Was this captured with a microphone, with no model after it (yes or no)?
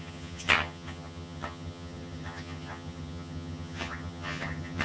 no